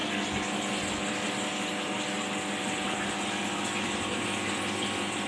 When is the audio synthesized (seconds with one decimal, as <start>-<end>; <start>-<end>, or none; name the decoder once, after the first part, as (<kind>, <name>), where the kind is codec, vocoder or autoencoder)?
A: none